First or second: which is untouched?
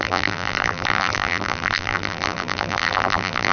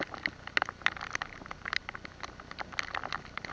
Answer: second